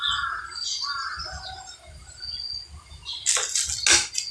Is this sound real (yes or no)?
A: yes